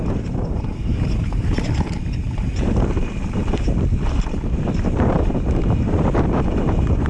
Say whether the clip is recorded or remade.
remade